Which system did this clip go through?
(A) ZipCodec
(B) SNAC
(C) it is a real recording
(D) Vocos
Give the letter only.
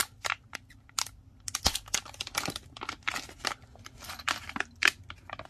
C